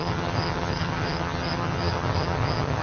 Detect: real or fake fake